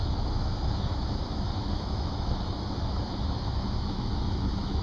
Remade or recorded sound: remade